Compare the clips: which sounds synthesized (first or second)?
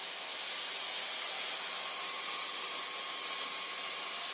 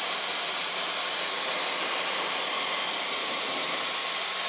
second